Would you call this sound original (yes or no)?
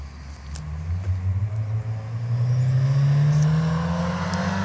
yes